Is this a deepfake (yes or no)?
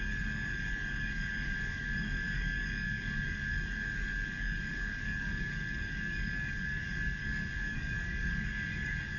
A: yes